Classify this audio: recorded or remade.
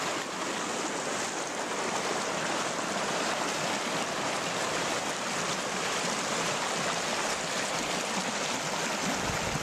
recorded